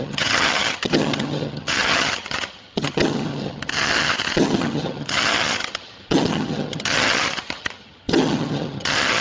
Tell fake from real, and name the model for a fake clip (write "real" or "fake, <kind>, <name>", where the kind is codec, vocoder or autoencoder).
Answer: fake, vocoder, HiFi-GAN